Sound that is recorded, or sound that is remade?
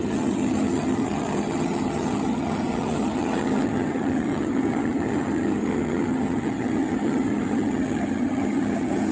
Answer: remade